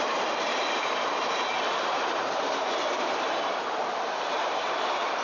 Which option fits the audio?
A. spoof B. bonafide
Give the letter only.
A